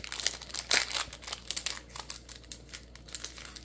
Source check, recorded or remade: recorded